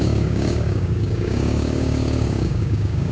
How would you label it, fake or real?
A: fake